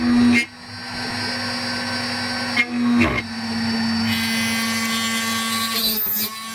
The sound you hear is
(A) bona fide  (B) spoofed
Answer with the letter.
A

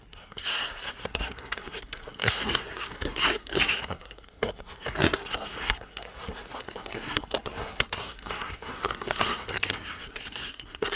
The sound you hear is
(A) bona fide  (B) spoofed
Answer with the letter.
B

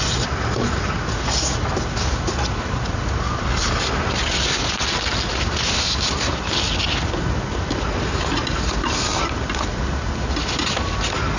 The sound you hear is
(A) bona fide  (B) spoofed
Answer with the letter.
A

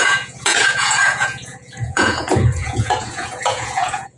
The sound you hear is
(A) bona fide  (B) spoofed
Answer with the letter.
B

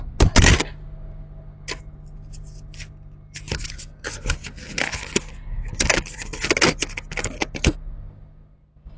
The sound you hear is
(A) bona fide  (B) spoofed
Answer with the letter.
A